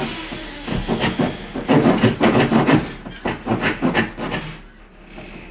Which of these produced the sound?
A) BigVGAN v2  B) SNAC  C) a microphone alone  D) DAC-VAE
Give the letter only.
C